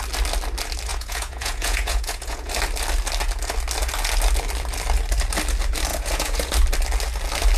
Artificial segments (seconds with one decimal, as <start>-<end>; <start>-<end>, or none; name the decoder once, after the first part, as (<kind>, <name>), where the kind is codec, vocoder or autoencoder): 0.9-2.5 (vocoder, Vocos); 5.9-6.5